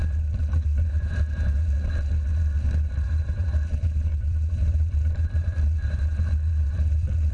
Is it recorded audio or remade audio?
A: remade